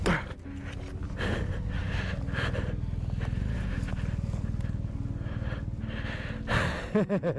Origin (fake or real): real